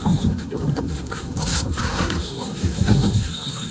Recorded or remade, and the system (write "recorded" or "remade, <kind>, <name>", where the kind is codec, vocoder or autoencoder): remade, codec, SNAC